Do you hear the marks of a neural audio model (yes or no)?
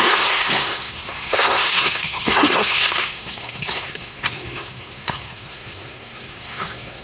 yes